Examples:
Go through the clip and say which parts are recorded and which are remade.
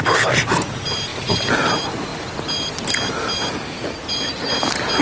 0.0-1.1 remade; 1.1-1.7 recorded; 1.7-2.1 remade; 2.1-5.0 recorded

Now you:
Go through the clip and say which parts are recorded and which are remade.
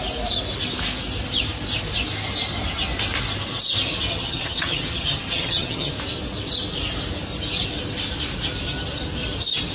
0.0-4.1 recorded; 4.1-5.9 remade; 5.9-9.7 recorded